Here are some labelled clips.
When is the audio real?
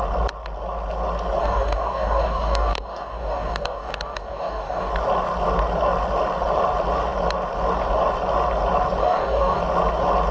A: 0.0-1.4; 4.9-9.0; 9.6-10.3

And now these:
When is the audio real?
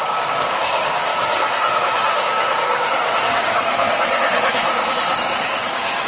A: 1.1-1.8; 3.7-4.5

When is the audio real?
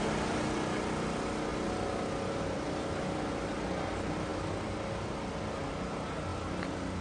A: 0.0-7.0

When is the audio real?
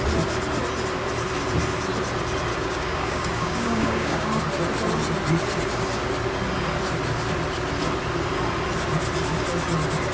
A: 0.0-2.5; 4.4-10.1